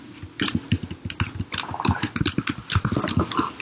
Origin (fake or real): real